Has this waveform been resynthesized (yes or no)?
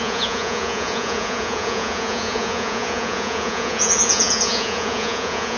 yes